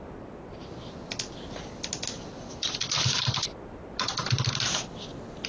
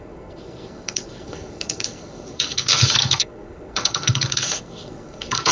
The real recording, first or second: first